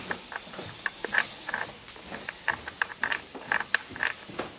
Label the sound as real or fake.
real